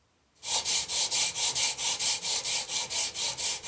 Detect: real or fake real